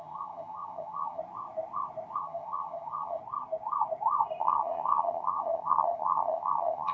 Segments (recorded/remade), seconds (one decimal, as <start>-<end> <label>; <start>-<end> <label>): 0.0-1.2 remade; 1.2-2.2 recorded; 2.2-3.2 remade; 3.2-4.4 recorded; 4.4-6.9 remade